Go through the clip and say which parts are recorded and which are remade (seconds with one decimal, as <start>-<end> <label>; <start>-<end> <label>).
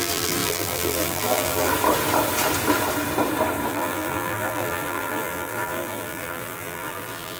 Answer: 0.0-1.7 remade; 1.7-3.7 recorded; 3.7-7.4 remade